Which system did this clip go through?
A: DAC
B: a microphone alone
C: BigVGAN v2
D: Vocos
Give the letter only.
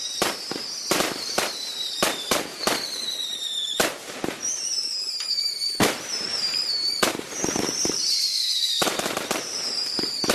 C